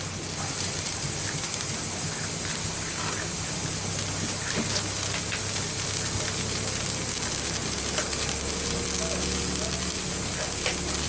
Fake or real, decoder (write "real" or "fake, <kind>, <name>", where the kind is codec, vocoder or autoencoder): real